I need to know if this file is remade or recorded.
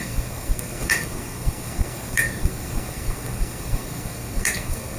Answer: remade